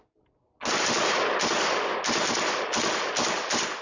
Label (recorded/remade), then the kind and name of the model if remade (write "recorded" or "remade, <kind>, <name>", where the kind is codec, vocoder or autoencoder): recorded